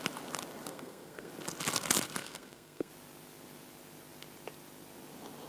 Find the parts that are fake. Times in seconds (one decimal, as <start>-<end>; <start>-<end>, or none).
0.7-1.3; 2.2-2.9